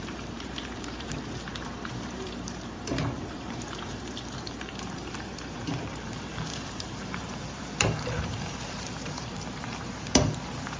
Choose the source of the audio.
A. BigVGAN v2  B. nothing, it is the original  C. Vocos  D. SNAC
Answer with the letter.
A